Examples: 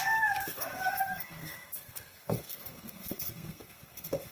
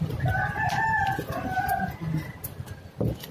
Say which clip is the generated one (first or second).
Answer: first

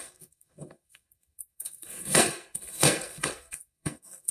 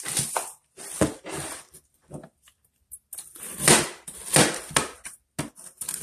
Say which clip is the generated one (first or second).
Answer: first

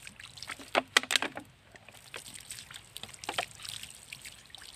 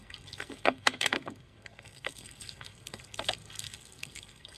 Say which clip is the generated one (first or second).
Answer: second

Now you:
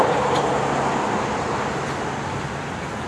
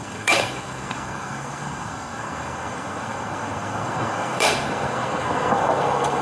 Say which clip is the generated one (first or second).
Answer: second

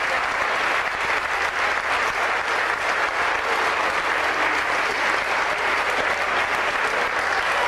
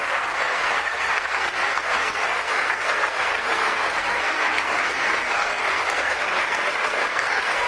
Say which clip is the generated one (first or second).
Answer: second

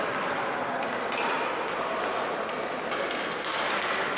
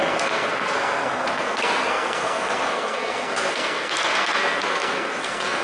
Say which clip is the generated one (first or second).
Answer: second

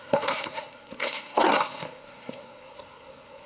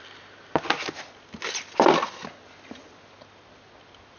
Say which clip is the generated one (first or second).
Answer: first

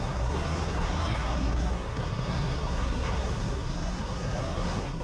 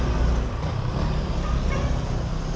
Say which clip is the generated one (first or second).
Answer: first